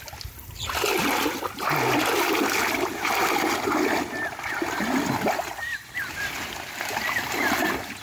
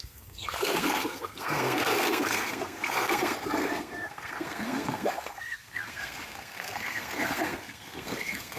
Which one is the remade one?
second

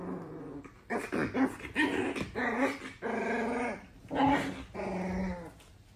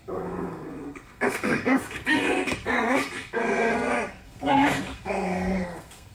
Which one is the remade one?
second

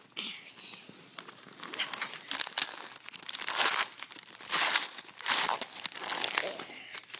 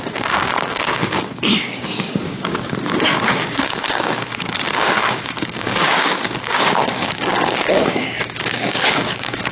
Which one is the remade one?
second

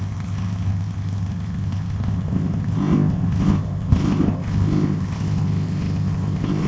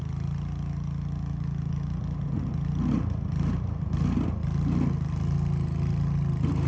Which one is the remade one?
first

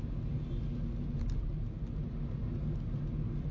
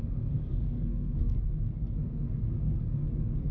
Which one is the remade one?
second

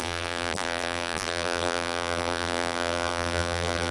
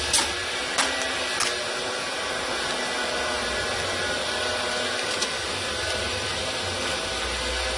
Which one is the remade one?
first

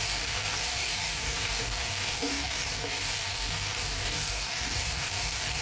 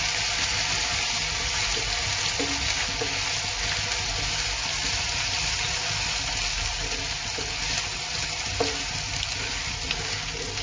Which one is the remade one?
first